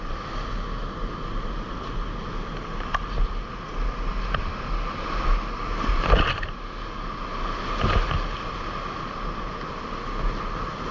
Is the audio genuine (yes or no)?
yes